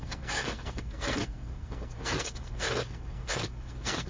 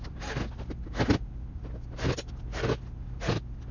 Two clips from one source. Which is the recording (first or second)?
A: second